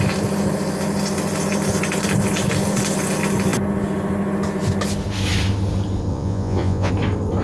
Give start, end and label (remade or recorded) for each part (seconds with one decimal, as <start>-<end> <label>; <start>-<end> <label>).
0.0-6.1 recorded; 6.1-6.9 remade; 6.9-7.4 recorded

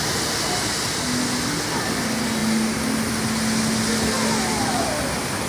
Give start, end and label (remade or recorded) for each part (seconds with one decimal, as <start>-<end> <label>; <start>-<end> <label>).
0.0-5.5 recorded

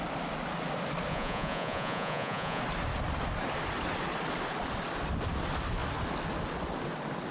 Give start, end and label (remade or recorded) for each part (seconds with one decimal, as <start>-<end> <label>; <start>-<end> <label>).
0.0-1.1 recorded; 1.1-2.6 remade; 2.6-7.3 recorded

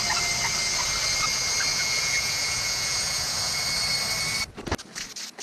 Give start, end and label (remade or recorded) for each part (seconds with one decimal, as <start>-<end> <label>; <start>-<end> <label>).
0.0-1.7 recorded; 1.7-3.6 remade; 3.6-5.4 recorded

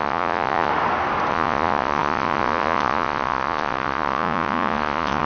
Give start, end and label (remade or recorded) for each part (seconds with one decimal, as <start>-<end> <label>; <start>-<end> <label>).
0.0-0.7 remade; 0.7-1.3 recorded; 1.3-5.2 remade